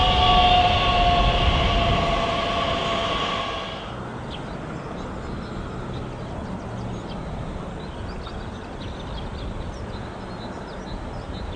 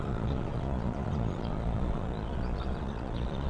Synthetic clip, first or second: second